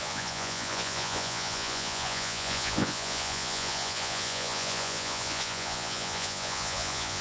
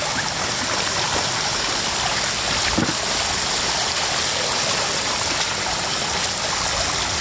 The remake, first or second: first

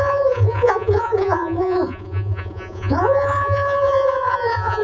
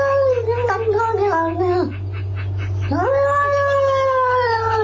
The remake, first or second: first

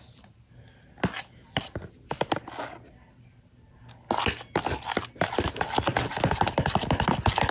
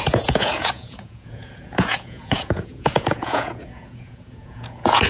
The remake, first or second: second